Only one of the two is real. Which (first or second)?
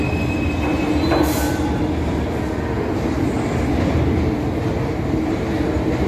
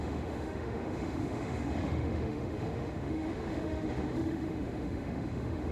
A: first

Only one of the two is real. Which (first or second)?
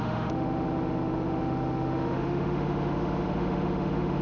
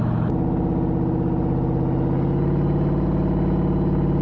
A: second